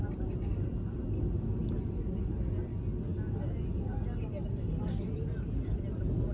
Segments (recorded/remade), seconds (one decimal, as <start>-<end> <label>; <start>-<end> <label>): 0.0-6.3 recorded